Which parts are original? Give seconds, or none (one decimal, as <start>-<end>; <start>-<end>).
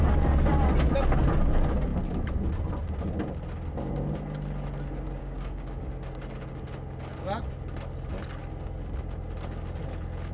0.0-5.2; 5.8-10.3